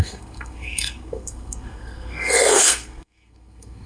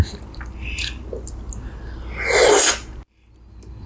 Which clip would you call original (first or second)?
second